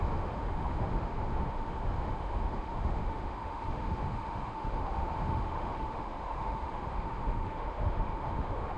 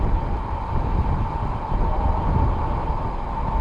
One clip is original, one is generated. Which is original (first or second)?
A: second